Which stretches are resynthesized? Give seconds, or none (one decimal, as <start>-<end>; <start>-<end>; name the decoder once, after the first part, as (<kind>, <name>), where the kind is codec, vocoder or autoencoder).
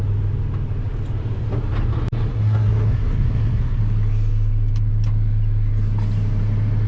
2.3-3.8 (codec, SNAC)